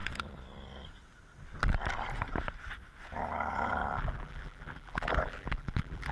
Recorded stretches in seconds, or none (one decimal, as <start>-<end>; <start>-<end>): 0.0-3.9